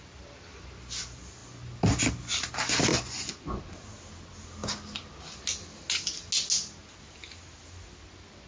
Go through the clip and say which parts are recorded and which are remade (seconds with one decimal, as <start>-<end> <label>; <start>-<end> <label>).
0.0-2.9 recorded; 2.9-3.6 remade; 3.6-8.5 recorded